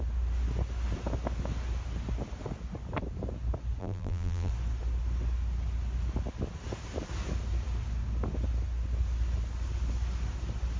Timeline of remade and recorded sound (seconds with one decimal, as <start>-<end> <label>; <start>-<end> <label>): 0.0-3.8 recorded; 3.8-4.5 remade; 4.5-10.8 recorded